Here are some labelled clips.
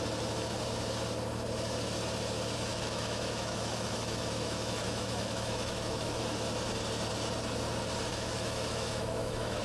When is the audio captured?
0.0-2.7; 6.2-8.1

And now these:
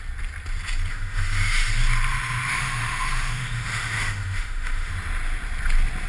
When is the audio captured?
0.0-0.9; 1.7-2.5; 4.9-6.1

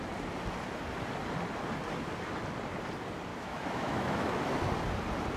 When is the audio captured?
0.0-3.3; 4.6-5.4

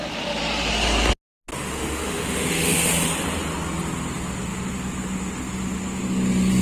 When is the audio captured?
0.0-1.5; 2.9-6.6

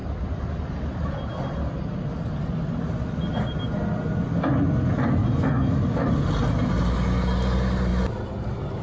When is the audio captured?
0.0-5.2; 6.1-8.8

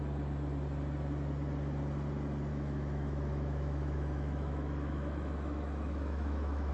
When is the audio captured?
0.0-2.5